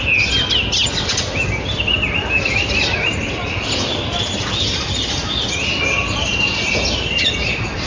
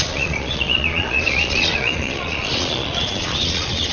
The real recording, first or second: first